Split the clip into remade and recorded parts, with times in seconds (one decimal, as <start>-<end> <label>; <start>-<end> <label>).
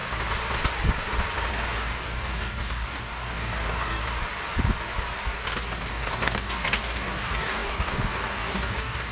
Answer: 0.0-1.5 recorded; 1.5-4.0 remade; 4.0-5.9 recorded; 5.9-9.1 remade